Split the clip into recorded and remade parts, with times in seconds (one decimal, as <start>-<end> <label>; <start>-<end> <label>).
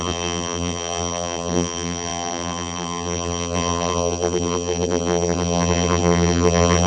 0.0-6.9 remade